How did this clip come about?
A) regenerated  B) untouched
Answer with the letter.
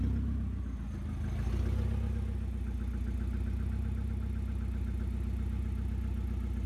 B